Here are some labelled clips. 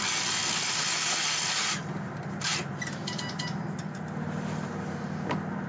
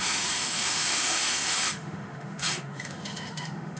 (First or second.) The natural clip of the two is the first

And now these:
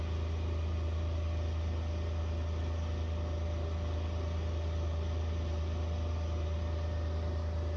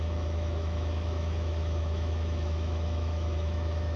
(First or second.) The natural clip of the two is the first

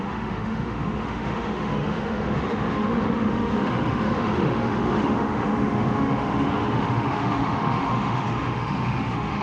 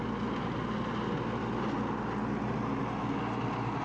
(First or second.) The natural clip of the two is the second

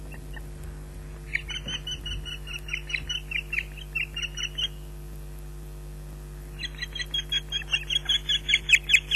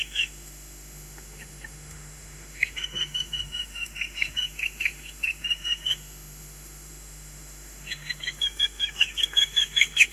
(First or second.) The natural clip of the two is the first